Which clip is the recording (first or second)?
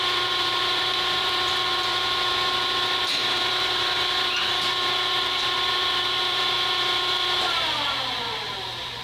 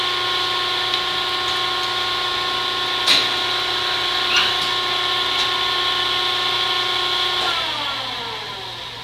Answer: second